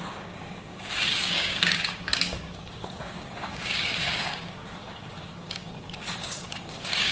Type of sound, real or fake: fake